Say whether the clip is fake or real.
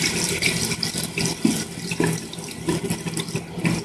real